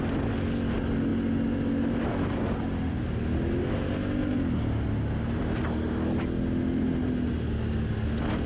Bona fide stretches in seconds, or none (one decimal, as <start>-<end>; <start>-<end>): 0.0-8.5